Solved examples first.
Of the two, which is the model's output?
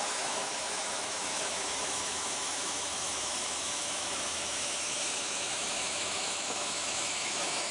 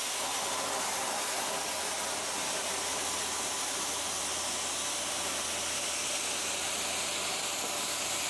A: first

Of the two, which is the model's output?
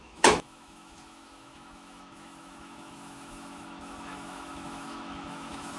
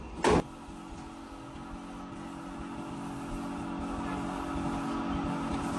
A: first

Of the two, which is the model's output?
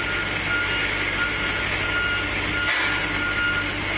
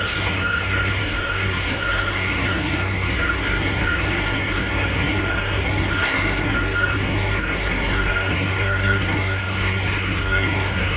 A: second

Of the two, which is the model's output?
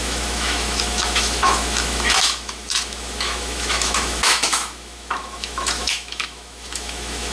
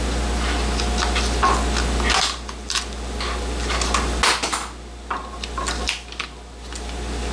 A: first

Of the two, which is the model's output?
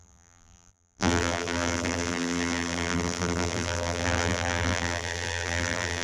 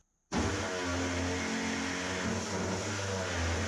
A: first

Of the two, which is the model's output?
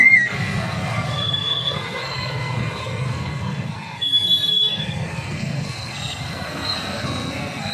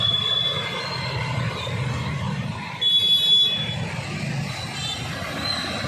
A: first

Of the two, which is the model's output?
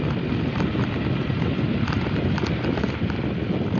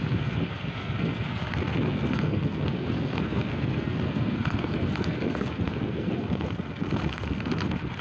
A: second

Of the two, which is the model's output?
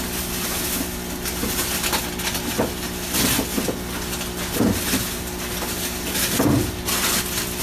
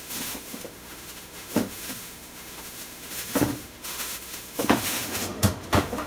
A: second